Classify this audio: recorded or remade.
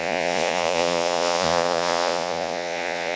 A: remade